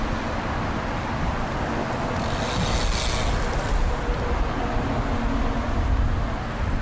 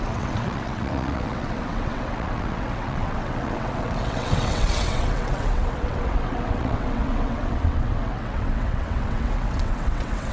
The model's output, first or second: second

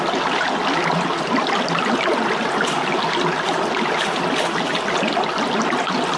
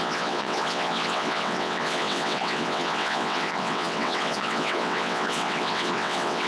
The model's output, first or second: second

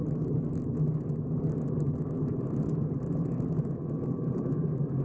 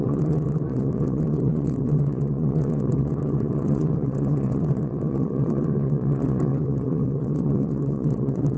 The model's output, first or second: second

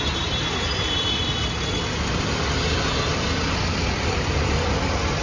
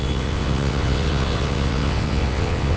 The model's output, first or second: second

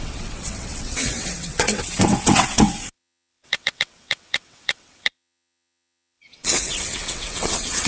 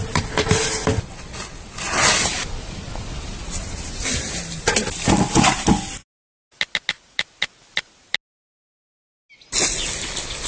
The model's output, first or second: first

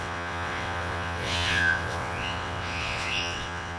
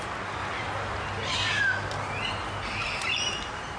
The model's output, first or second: first